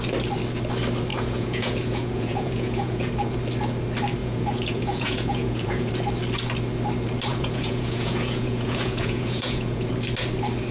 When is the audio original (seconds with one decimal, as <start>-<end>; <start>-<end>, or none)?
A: 0.0-1.1; 3.1-4.2; 5.9-7.3; 9.9-10.7

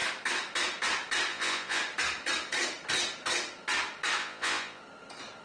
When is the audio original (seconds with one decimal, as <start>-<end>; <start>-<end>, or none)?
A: 0.0-1.3; 1.8-4.2; 4.8-5.4

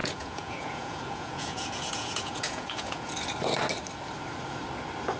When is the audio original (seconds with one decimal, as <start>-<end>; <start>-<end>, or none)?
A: 3.1-5.2

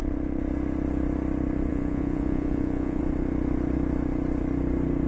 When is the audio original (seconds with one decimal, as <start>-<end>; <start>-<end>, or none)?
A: 0.0-1.7; 3.0-5.1